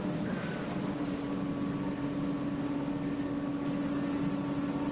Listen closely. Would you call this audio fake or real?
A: real